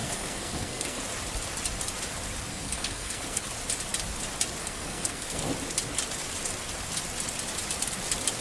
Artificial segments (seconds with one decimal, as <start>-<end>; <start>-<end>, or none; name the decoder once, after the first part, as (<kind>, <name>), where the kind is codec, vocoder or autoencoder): 0.0-1.0 (codec, SNAC); 2.5-3.4; 4.6-5.5